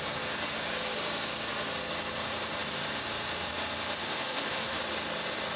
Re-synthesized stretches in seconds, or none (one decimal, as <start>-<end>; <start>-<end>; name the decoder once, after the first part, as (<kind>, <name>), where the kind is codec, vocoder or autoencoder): 4.0-4.8 (autoencoder, DAC-VAE)